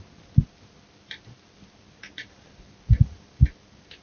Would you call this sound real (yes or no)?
yes